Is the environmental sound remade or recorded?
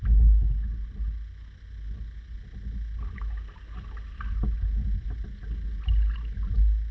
recorded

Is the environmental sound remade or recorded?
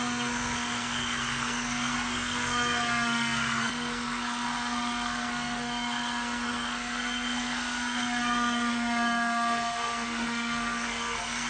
remade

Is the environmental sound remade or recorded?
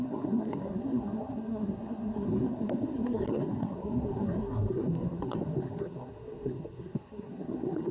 remade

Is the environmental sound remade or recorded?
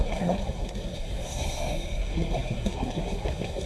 remade